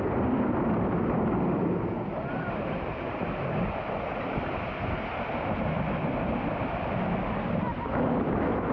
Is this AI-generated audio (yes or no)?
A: no